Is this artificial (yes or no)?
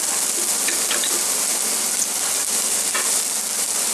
no